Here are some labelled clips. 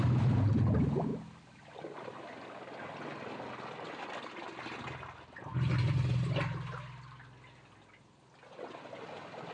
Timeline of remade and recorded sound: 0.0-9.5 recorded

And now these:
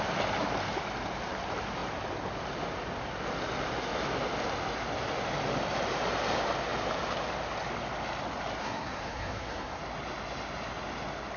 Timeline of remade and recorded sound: 0.0-8.6 recorded; 8.6-9.8 remade; 9.8-11.4 recorded

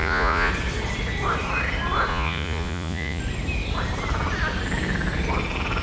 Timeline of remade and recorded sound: 0.0-0.5 remade; 0.5-2.1 recorded; 2.1-3.2 remade; 3.2-5.8 recorded

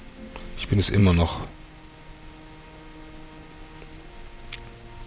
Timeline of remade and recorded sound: 0.0-5.1 recorded